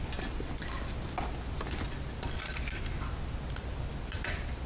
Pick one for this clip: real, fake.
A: real